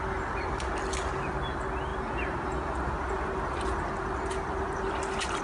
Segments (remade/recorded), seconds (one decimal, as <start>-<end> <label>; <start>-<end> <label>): 0.0-5.4 recorded